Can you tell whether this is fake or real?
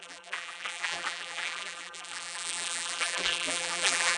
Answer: fake